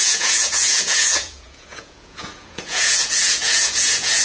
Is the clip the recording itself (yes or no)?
no